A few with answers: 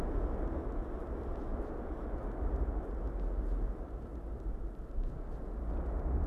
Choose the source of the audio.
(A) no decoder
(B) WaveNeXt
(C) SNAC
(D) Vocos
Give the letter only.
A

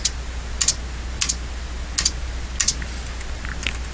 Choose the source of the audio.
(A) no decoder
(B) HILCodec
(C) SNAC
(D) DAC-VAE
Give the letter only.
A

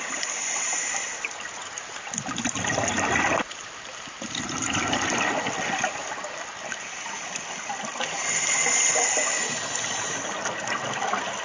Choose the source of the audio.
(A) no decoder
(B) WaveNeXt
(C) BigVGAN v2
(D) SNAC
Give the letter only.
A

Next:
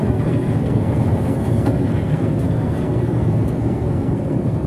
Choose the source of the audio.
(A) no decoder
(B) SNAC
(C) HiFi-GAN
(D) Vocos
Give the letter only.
B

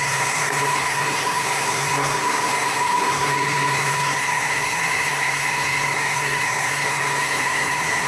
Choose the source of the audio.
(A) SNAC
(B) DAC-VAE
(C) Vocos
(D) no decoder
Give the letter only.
A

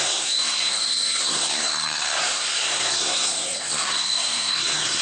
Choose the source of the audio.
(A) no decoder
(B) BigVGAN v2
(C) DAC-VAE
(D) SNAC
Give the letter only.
D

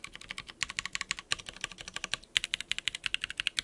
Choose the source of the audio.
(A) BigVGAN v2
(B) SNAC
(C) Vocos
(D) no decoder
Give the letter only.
D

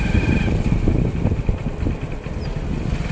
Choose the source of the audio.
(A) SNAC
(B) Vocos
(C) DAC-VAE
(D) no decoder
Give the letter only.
D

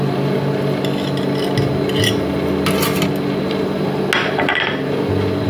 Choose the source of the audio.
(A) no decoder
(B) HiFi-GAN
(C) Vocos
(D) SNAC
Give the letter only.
A